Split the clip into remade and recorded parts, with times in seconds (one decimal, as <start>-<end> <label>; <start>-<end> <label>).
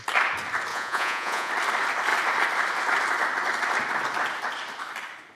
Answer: 0.0-0.7 recorded; 0.7-1.5 remade; 1.5-5.4 recorded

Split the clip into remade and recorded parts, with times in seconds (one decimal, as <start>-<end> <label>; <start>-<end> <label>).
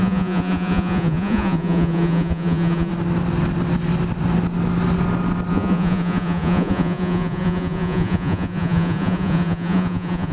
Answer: 0.0-2.9 remade; 2.9-5.5 recorded; 5.5-10.3 remade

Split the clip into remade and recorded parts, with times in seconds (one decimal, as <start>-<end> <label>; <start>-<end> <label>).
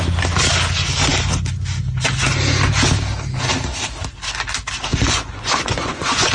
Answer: 0.0-4.9 recorded; 4.9-6.3 remade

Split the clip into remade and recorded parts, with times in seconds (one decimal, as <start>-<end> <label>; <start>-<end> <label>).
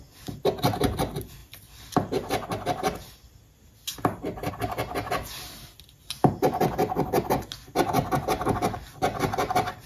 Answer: 0.0-9.9 recorded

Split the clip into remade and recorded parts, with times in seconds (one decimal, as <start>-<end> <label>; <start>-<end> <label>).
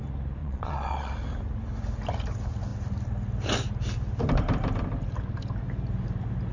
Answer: 0.0-0.4 recorded; 0.4-1.1 remade; 1.1-6.5 recorded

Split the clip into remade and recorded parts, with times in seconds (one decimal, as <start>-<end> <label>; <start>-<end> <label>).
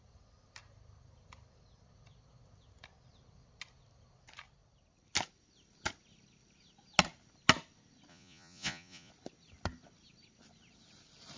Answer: 0.0-8.1 recorded; 8.1-9.1 remade; 9.1-11.4 recorded